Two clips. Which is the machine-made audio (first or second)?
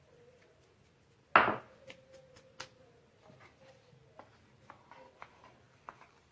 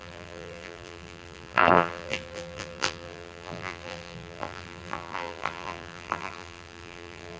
second